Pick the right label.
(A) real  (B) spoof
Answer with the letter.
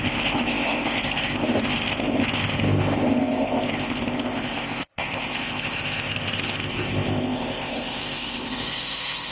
B